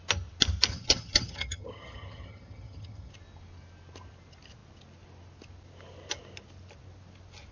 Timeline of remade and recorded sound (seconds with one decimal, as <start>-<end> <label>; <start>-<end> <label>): 0.0-0.7 recorded; 0.7-3.1 remade; 3.1-7.5 recorded